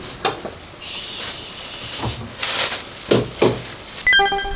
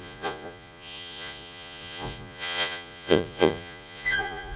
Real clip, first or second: first